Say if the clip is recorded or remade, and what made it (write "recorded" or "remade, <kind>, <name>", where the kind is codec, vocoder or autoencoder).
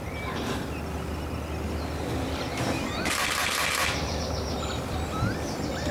recorded